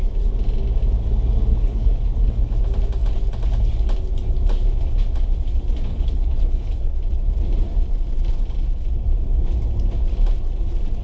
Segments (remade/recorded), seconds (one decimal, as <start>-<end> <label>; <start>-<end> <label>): 0.0-1.5 recorded; 1.5-2.4 remade; 2.4-5.9 recorded; 5.9-7.0 remade; 7.0-11.0 recorded

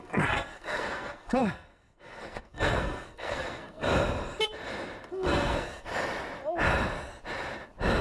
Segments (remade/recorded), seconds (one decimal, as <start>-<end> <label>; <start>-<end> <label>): 0.0-3.9 remade; 3.9-5.1 recorded; 5.1-5.9 remade; 5.9-8.0 recorded

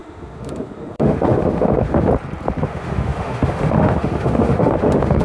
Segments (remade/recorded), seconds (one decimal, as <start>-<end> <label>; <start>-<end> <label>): 0.0-2.1 remade; 2.1-2.6 recorded; 2.6-5.2 remade

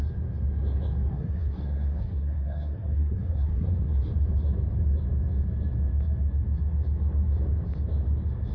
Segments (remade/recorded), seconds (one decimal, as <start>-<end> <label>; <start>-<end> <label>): 0.0-1.1 recorded; 1.1-4.1 remade; 4.1-8.5 recorded

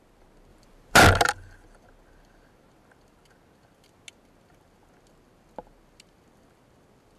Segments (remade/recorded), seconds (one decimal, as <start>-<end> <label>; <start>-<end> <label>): 0.0-0.5 recorded; 0.5-1.0 remade; 1.0-7.2 recorded

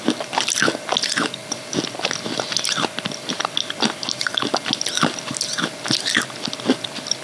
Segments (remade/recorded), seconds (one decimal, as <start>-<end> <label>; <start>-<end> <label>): 0.0-7.2 recorded

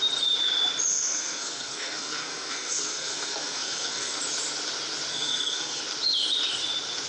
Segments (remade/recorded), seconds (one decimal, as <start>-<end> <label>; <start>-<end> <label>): 0.0-0.9 recorded; 0.9-4.2 remade; 4.2-5.1 recorded; 5.1-5.8 remade; 5.8-7.1 recorded

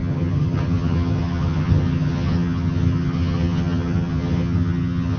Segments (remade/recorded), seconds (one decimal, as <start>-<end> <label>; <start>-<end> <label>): 0.0-5.2 remade